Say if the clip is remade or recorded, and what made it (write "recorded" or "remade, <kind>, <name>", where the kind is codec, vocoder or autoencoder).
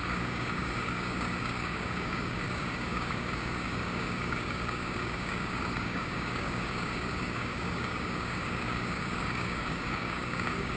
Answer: remade, codec, DAC